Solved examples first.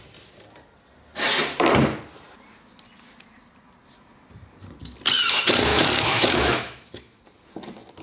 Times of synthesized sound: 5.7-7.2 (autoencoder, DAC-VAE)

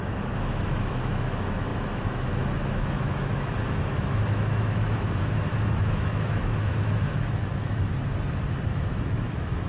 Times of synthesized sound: 0.0-7.9 (autoencoder, DAC-VAE); 8.7-9.7

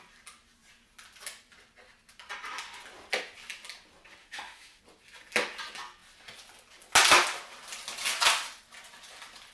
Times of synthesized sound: 4.2-4.8 (autoencoder, DAC-VAE)

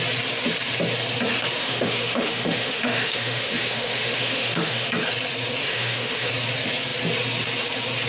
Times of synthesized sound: 1.6-4.9 (autoencoder, DAC-VAE); 5.6-6.3